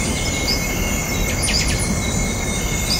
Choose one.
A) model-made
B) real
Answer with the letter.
B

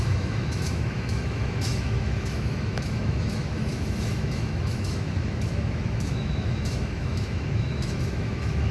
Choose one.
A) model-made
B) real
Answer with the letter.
A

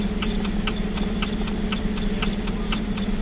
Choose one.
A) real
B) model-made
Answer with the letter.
A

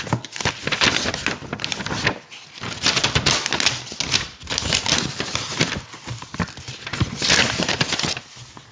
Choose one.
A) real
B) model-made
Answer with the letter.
A